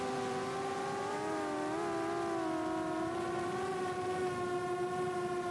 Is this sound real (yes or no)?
yes